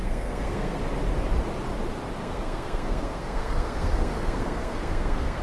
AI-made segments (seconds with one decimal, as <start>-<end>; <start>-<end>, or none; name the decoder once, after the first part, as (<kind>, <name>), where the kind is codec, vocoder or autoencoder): 0.0-0.8 (codec, SNAC); 2.2-5.4